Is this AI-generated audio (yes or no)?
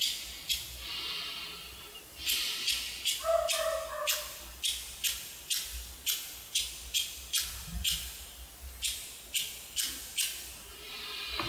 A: no